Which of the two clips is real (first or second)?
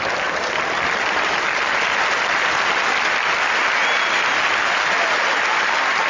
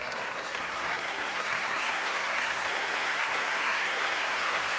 first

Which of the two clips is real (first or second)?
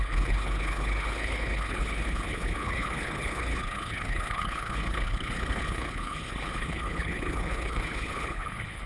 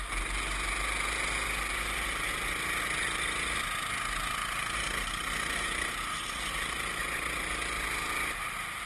second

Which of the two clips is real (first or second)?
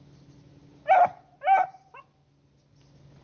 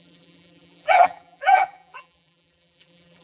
first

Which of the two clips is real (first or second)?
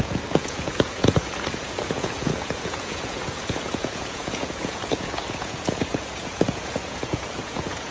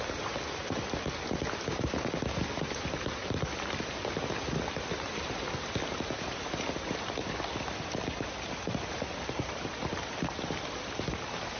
second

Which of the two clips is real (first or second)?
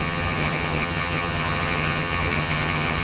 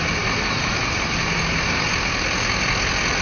second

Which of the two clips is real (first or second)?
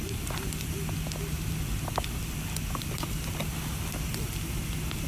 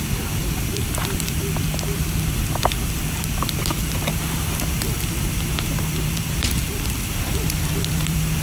first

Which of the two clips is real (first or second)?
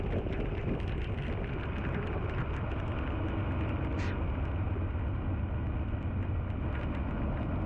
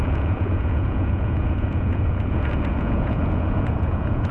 first